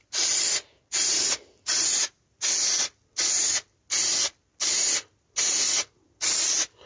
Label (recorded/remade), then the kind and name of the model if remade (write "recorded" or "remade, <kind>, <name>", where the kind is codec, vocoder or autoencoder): recorded